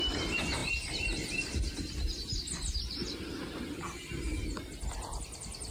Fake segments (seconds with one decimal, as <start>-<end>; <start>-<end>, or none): none